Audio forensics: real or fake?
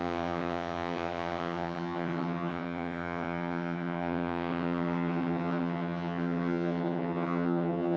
fake